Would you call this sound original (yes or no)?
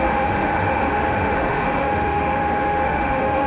no